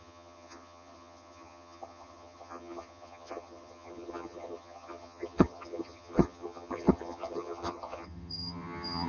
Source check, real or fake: fake